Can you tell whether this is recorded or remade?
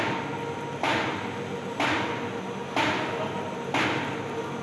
recorded